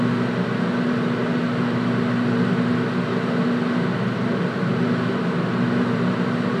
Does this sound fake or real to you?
real